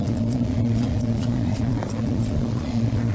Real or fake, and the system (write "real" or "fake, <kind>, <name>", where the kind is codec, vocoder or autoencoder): fake, vocoder, Vocos